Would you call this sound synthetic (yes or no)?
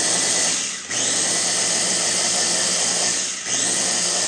no